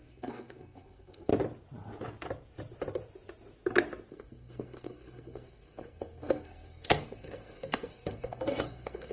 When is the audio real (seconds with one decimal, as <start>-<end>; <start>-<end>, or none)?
1.3-4.1